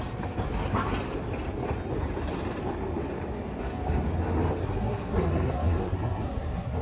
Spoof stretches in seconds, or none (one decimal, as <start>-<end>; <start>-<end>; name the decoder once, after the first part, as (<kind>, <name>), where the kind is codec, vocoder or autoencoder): 4.6-6.8 (codec, SNAC)